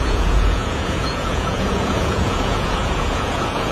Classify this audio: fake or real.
fake